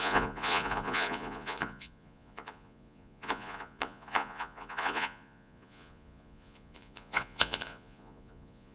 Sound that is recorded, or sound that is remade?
remade